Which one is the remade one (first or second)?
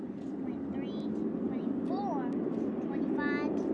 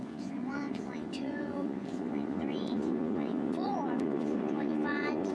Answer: second